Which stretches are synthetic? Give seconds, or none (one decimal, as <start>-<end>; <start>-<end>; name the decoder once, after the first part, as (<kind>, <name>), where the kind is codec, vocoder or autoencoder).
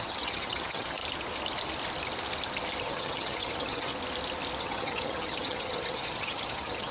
0.0-1.0 (vocoder, HiFi-GAN); 2.8-3.9; 4.6-6.9